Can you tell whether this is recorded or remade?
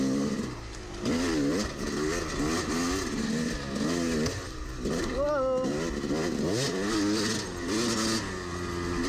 recorded